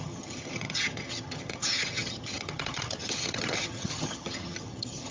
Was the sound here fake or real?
fake